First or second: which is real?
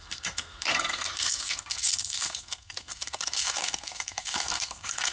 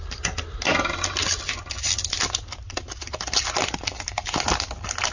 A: second